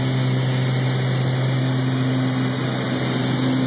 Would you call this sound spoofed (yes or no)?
no